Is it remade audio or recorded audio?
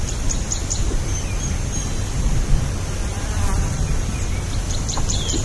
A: recorded